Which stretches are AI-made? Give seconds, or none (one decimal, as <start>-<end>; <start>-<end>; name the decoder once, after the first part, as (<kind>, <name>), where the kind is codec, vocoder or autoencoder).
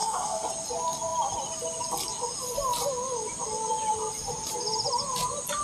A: 0.0-0.5 (codec, SNAC)